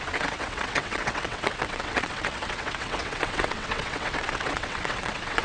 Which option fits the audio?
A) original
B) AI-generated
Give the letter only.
B